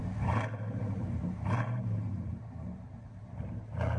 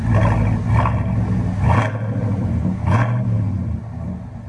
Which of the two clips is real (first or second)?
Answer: second